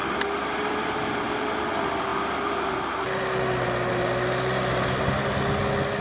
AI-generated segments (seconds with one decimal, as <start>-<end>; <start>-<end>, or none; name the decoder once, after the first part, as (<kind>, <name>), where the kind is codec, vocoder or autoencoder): none